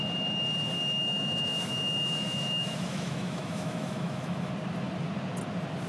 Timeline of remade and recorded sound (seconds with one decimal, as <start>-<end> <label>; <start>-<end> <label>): 0.0-1.0 recorded; 1.0-4.5 remade; 4.5-5.9 recorded